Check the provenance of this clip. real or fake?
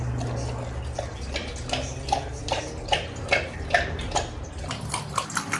real